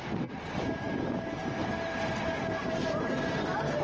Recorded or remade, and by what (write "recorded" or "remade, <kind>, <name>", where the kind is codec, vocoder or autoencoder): recorded